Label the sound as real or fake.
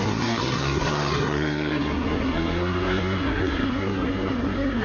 fake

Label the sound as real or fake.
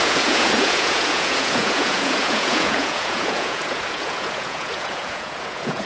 fake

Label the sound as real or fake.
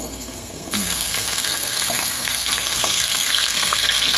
fake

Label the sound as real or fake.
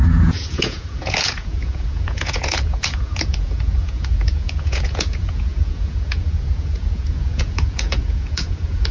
fake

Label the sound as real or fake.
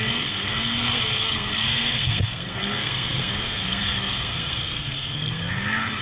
fake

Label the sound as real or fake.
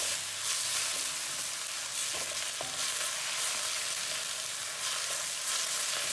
real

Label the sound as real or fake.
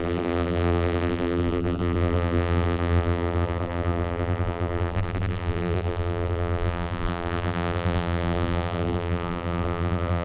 fake